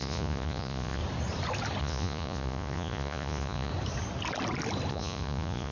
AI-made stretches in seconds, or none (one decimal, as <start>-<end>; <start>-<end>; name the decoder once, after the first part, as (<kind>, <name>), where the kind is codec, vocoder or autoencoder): 0.0-1.0 (vocoder, Vocos); 1.8-3.7; 4.9-5.7